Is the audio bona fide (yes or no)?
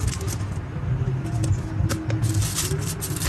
yes